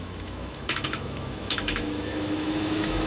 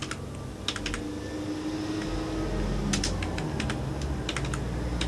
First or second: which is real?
second